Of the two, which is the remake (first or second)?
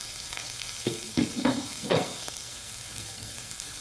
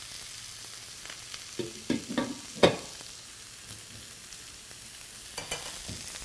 first